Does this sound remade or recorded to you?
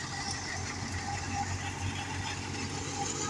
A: recorded